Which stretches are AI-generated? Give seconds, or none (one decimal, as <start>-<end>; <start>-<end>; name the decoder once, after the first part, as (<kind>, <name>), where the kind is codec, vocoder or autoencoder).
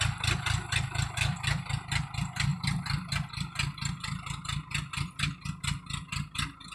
none